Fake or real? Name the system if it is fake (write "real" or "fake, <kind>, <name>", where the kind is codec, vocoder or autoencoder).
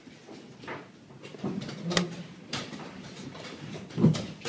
real